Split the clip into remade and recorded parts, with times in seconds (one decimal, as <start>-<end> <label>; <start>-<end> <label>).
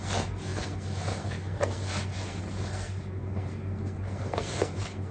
0.0-5.1 remade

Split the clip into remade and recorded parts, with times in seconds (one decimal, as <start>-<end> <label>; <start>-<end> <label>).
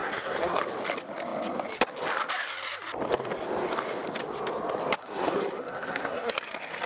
0.0-0.6 remade; 0.6-5.0 recorded; 5.0-6.3 remade; 6.3-6.9 recorded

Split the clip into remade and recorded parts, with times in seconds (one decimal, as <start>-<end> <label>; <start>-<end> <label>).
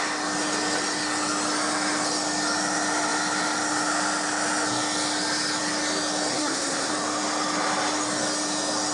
0.0-6.3 recorded; 6.3-6.9 remade; 6.9-8.9 recorded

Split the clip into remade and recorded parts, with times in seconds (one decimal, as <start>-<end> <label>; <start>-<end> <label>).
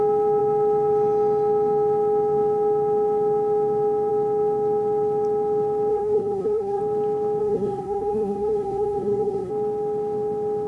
0.0-5.9 recorded; 5.9-6.8 remade; 6.8-7.4 recorded; 7.4-9.5 remade; 9.5-10.7 recorded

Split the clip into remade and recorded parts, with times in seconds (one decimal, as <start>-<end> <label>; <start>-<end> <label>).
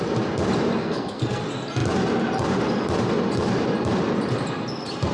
0.0-0.8 recorded; 0.8-1.4 remade; 1.4-5.1 recorded